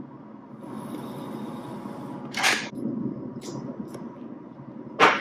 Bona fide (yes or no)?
yes